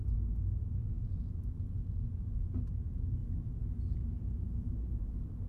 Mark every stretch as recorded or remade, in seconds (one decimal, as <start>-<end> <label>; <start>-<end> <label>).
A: 0.0-5.5 recorded